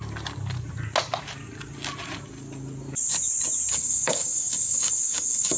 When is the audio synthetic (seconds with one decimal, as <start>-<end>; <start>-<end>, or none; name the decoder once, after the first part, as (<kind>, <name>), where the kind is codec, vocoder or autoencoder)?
3.7-5.6 (codec, DAC)